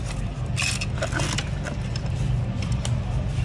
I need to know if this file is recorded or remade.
recorded